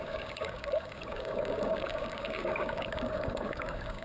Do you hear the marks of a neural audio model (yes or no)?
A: yes